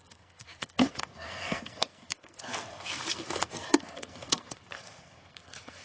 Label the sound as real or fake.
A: fake